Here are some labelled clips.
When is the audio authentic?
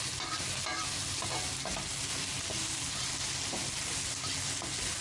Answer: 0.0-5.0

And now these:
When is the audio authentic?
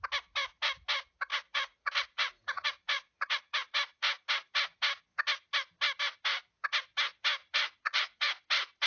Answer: 0.0-1.3; 4.2-7.4; 8.3-8.9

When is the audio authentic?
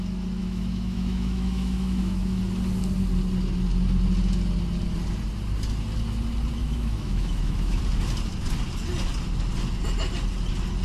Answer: 0.0-0.4; 2.4-6.6; 7.8-10.8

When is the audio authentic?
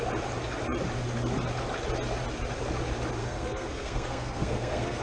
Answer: 0.0-3.2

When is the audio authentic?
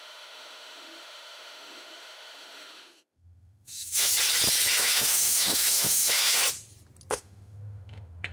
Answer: 4.1-4.8; 6.4-7.1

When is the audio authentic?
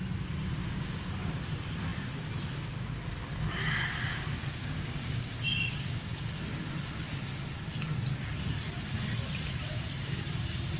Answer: 0.0-0.6; 1.4-4.5; 6.4-10.8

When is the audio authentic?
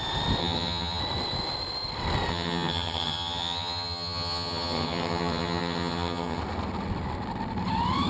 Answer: 0.0-0.4; 1.0-2.3; 6.4-8.1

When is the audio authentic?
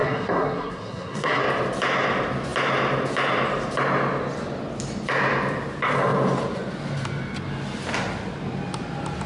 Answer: 1.4-9.3